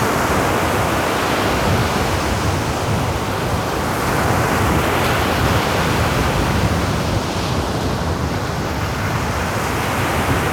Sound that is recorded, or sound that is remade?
recorded